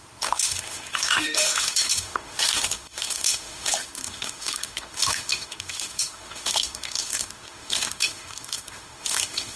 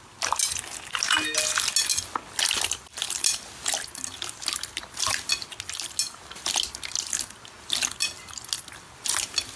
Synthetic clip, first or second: first